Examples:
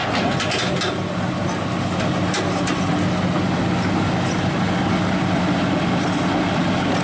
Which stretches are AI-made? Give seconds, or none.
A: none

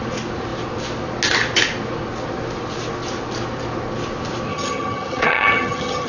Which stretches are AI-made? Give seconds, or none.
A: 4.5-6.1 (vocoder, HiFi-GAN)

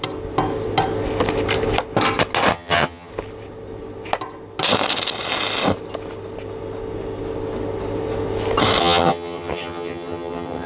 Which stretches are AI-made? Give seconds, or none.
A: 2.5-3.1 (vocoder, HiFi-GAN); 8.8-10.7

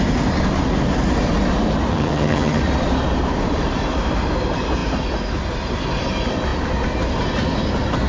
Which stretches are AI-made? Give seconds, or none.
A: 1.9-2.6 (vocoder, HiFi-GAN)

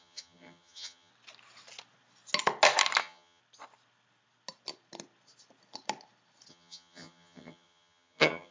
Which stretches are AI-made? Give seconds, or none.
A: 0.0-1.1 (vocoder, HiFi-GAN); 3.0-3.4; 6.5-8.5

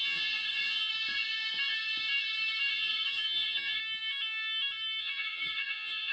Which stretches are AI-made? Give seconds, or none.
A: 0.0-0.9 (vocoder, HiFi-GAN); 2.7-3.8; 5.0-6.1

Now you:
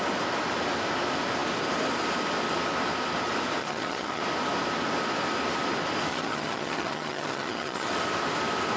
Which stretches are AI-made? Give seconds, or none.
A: 3.6-4.2 (vocoder, HiFi-GAN); 6.1-7.9